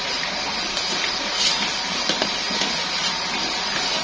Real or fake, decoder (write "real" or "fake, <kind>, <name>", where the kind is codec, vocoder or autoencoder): real